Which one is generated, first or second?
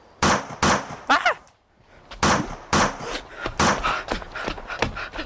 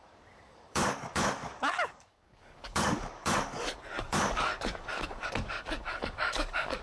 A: second